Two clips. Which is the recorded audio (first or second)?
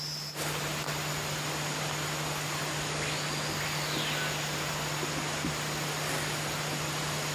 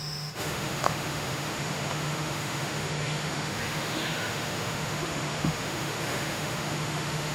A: first